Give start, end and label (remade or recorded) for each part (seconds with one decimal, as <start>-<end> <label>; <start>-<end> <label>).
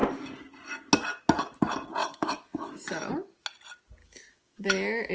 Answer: 0.0-2.0 recorded; 2.0-3.1 remade; 3.1-4.0 recorded; 4.0-5.1 remade